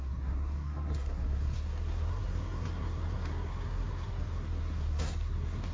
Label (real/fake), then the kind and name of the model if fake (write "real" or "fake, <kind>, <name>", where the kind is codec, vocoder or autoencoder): fake, codec, SNAC